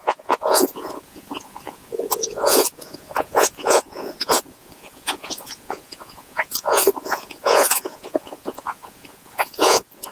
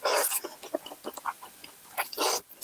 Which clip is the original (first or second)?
second